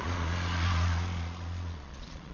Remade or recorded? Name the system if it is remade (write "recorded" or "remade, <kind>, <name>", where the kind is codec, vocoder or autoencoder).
remade, vocoder, Vocos